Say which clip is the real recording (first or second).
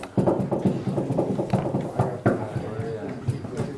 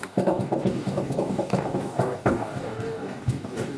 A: first